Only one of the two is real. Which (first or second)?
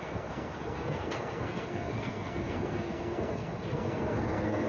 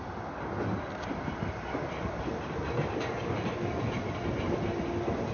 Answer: second